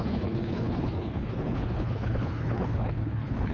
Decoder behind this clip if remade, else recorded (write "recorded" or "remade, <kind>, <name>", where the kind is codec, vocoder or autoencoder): remade, codec, HILCodec